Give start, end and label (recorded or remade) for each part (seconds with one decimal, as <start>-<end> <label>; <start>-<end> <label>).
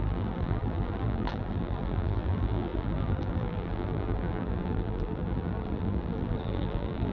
0.0-7.1 remade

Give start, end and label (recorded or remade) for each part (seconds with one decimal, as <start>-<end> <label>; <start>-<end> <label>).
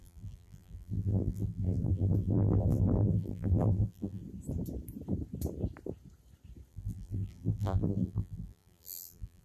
0.0-4.2 remade; 4.2-6.7 recorded; 6.7-9.4 remade